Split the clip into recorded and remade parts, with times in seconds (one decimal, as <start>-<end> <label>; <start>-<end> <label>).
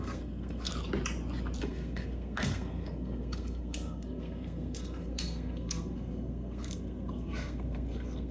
0.0-0.7 remade; 0.7-1.6 recorded; 1.6-8.3 remade